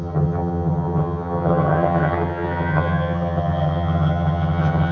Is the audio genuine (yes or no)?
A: no